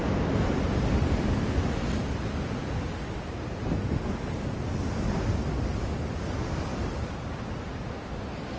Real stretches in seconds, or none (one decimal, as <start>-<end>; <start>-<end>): 0.0-8.6